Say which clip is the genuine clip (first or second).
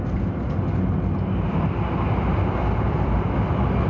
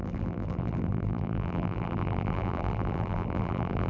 first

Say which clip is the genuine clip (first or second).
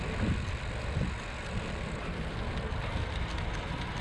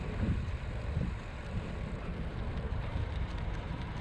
first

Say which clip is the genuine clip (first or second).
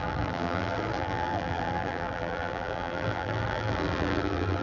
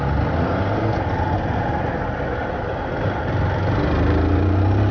second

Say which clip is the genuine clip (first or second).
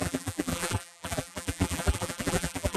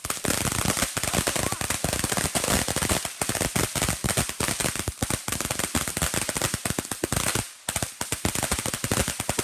second